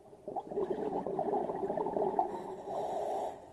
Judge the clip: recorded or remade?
recorded